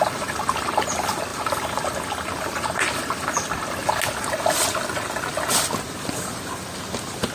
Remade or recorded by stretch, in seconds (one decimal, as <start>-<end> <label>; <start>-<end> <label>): 0.0-7.3 recorded